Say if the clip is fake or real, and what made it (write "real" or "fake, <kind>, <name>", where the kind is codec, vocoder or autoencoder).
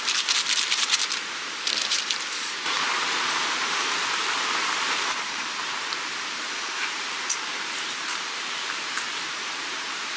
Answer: fake, vocoder, BigVGAN v2